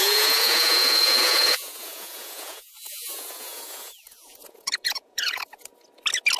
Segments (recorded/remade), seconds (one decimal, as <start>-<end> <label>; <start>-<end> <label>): 0.0-5.7 remade; 5.7-6.4 recorded